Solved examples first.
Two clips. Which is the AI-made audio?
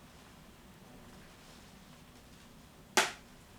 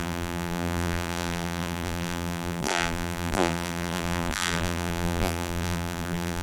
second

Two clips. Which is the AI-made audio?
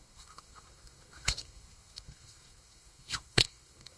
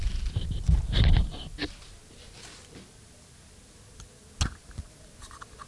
first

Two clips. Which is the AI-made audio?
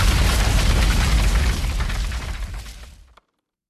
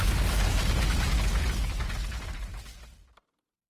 first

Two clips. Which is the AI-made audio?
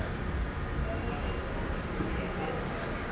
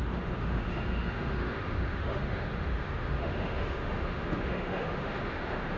second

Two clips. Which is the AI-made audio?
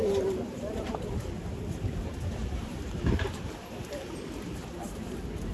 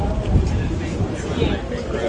first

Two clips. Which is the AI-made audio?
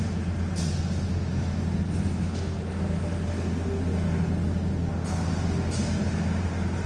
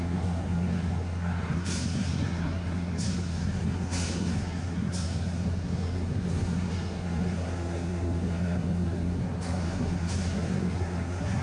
second